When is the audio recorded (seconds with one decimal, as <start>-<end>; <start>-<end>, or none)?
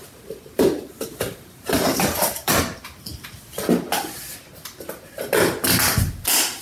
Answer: 2.5-6.6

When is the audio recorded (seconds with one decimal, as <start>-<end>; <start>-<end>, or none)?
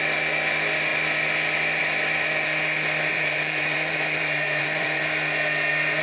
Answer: 0.0-3.1; 5.0-6.0